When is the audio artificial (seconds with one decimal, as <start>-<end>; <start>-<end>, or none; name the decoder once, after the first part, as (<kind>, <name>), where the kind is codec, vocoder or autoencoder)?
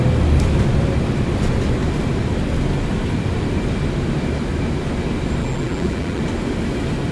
5.4-6.2 (vocoder, BigVGAN v2)